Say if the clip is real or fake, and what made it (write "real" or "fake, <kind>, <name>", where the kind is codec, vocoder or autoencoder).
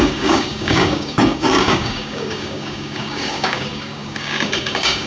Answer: fake, codec, DAC